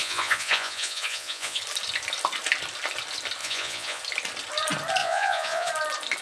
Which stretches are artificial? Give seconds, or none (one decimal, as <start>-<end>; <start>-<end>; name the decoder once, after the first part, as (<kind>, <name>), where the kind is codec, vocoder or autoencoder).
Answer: 0.0-1.6 (vocoder, Vocos); 3.4-4.0; 5.0-5.7

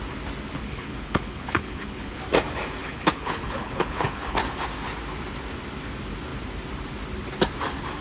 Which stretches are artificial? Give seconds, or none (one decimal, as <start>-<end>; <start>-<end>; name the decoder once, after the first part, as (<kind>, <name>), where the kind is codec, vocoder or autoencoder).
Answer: 0.6-2.2 (codec, HILCodec); 2.8-4.4